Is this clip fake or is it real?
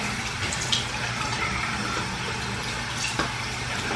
real